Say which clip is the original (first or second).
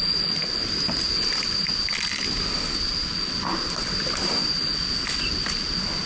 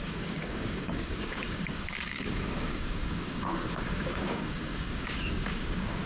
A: first